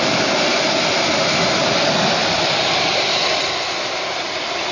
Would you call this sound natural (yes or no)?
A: yes